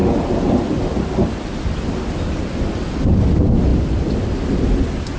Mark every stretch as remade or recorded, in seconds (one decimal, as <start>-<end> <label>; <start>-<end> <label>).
0.0-5.2 recorded